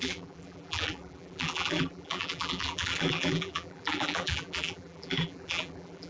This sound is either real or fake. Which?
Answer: fake